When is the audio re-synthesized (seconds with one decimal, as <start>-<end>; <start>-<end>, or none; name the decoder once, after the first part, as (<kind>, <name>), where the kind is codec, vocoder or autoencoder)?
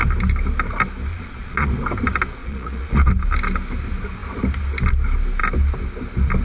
1.1-1.7 (vocoder, Vocos); 2.4-3.1